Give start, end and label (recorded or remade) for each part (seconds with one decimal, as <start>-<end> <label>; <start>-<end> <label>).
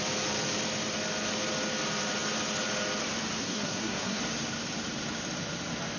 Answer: 0.0-3.4 recorded; 3.4-4.2 remade; 4.2-6.0 recorded